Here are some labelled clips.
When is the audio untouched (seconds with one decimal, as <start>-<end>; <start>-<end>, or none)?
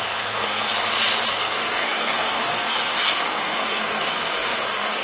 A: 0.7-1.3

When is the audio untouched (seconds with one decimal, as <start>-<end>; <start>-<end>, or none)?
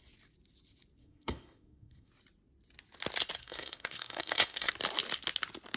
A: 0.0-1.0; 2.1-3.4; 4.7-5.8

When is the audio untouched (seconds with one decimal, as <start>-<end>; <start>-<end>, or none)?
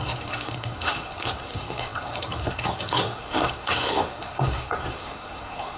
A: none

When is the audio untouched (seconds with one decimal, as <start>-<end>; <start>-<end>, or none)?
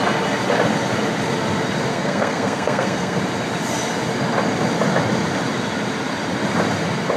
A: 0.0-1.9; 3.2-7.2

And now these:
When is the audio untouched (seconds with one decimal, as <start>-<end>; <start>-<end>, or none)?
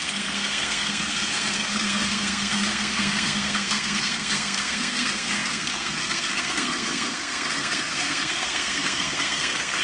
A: none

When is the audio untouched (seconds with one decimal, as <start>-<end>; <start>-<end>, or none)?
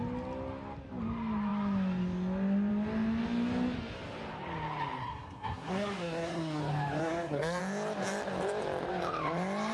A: 0.0-5.0; 6.6-7.0; 7.6-9.7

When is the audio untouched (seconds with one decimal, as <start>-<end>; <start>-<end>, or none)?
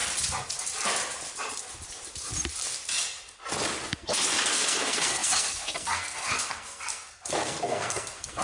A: 0.0-3.9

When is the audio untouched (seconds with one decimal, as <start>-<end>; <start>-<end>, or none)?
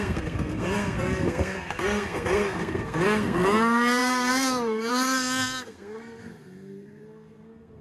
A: none